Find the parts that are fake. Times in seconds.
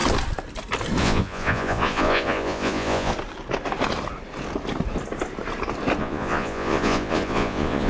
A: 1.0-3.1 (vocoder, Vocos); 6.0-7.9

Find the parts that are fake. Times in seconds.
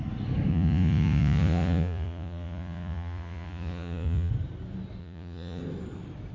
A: 0.5-4.3 (vocoder, Vocos); 5.0-5.6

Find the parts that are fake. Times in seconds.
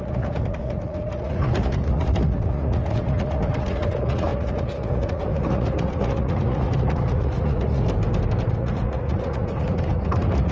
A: 0.0-7.8 (vocoder, Vocos); 8.4-10.5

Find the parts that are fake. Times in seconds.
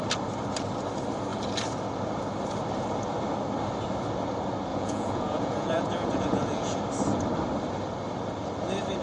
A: 4.7-6.8 (vocoder, Vocos)